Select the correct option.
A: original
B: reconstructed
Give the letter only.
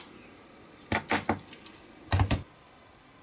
A